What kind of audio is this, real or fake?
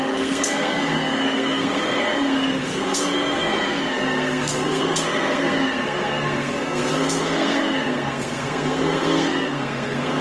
fake